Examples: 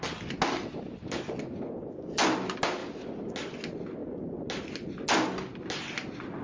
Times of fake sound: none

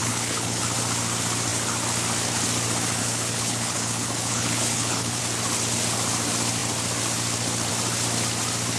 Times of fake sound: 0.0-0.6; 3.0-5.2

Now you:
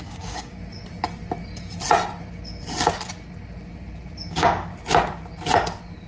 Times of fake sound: 0.0-0.6; 4.3-4.7